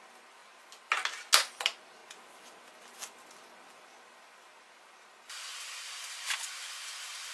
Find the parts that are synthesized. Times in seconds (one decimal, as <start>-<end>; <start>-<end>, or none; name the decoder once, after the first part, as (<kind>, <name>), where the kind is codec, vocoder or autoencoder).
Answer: none